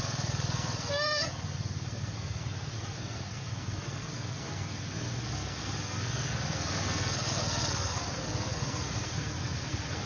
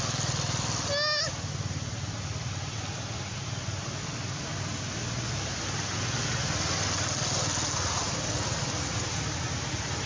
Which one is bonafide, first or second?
second